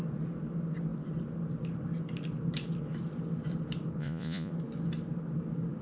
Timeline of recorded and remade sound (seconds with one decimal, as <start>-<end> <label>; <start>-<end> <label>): 0.0-4.0 recorded; 4.0-4.5 remade; 4.5-5.8 recorded